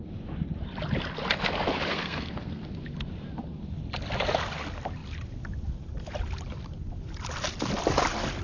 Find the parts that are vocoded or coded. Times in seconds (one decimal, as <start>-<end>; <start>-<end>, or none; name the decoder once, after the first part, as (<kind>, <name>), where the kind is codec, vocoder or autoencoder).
1.9-2.6 (codec, SNAC)